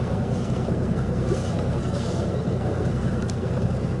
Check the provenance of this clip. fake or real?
fake